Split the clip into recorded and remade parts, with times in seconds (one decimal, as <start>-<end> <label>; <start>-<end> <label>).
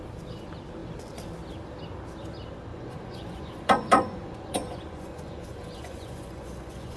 0.0-2.7 recorded; 2.7-7.0 remade